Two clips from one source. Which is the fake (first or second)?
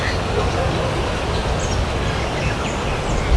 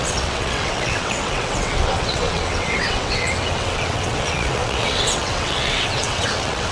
second